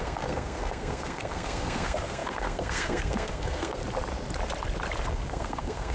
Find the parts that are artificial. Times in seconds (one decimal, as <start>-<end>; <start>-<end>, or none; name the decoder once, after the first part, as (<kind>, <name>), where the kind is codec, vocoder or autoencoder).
0.0-3.8 (codec, SNAC); 5.1-5.9